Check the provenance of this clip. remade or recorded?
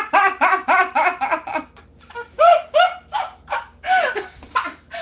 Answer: recorded